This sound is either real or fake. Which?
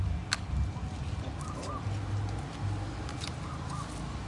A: real